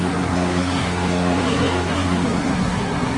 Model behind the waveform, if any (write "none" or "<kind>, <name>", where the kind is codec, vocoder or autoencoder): codec, SNAC